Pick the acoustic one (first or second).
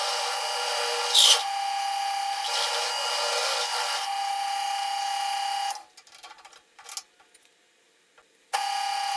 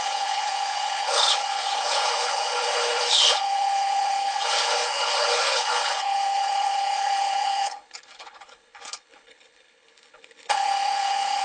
first